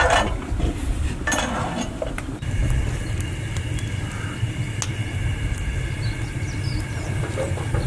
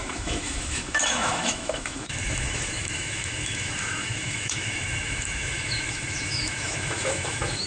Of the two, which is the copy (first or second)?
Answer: second